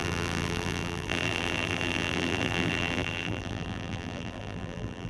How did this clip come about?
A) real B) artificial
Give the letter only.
B